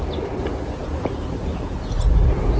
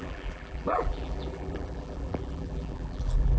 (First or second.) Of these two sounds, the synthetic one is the second